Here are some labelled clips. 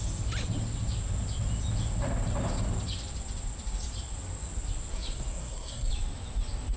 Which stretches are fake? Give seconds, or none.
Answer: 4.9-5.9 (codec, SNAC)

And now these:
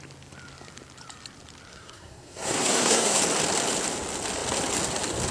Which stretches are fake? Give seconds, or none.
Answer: 1.7-3.2 (codec, SNAC)